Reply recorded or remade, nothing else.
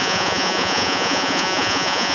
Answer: remade